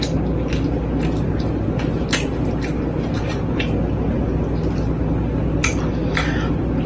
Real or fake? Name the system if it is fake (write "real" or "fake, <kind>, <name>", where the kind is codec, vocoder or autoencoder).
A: real